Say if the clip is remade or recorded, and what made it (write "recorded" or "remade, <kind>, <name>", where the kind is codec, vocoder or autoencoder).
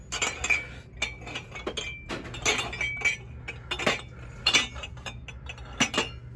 recorded